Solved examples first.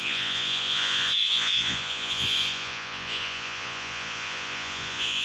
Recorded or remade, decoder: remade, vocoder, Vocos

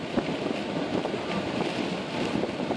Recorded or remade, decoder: recorded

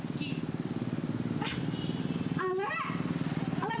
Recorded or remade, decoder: recorded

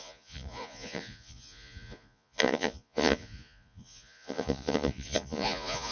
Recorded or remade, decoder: remade, vocoder, Vocos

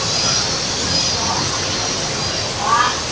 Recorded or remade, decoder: recorded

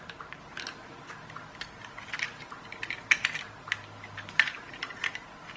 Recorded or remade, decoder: recorded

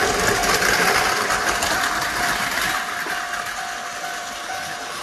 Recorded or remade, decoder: recorded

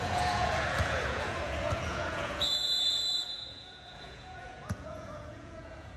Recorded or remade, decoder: remade, vocoder, Vocos